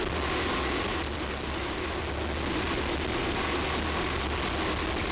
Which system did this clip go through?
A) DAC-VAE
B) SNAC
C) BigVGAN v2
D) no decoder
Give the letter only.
D